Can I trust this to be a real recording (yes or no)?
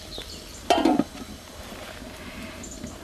yes